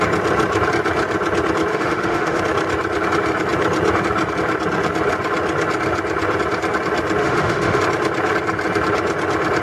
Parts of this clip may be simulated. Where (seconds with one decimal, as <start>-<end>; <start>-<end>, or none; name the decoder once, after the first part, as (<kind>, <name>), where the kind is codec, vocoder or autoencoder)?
1.7-2.4 (autoencoder, DAC-VAE); 7.2-7.8